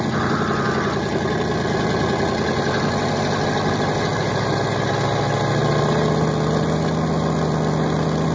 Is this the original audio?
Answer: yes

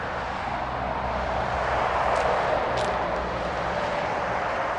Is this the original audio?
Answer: yes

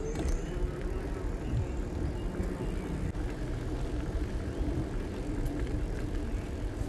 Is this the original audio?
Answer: yes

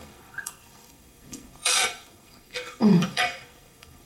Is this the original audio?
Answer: no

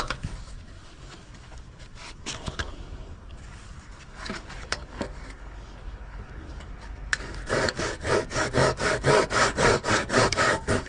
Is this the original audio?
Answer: no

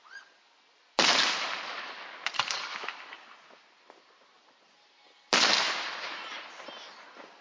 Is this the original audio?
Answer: yes